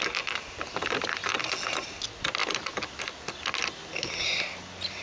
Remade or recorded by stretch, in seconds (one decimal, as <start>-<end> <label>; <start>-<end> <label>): 0.0-5.0 recorded